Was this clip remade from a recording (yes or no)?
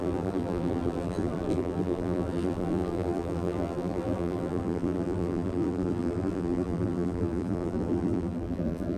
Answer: yes